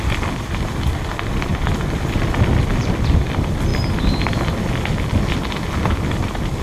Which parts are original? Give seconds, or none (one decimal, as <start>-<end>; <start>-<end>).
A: 0.0-6.6